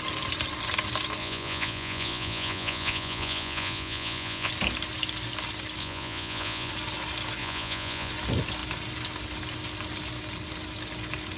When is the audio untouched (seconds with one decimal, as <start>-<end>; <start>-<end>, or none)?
0.0-1.2; 4.5-5.8; 6.7-7.4; 8.1-11.4